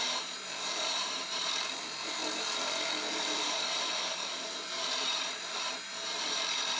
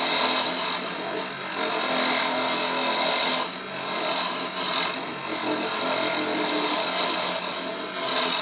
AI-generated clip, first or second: first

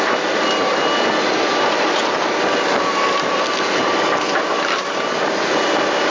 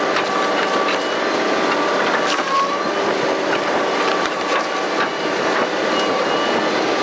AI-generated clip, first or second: second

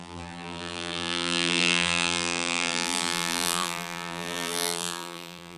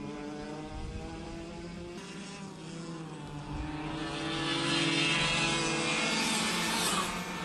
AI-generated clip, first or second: first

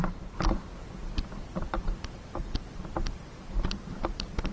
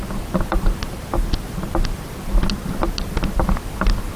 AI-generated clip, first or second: first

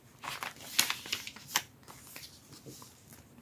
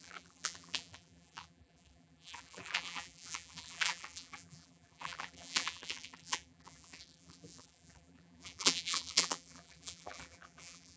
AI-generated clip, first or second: second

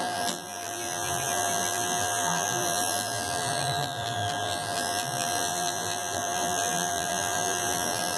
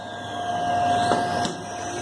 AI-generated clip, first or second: first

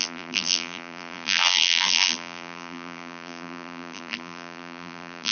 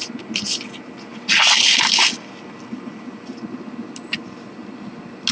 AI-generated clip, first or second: first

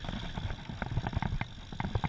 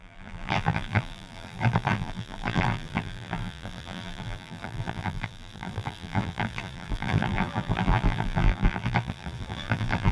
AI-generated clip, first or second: second